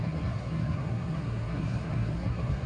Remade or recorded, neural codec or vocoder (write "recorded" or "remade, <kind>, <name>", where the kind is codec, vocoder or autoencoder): remade, codec, SNAC